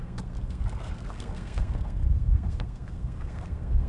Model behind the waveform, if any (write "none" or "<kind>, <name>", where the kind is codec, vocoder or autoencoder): codec, SNAC